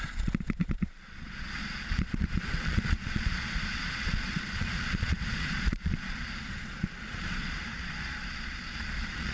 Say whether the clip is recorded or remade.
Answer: remade